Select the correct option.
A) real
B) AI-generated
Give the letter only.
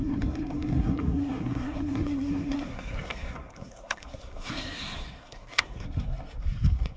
B